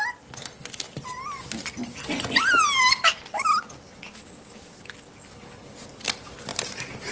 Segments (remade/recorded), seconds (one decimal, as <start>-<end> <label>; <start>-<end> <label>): 0.0-4.1 recorded; 4.1-4.7 remade; 4.7-7.1 recorded